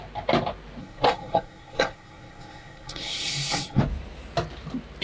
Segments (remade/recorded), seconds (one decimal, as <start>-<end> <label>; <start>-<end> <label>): 0.0-0.8 recorded; 0.8-3.8 remade; 3.8-5.0 recorded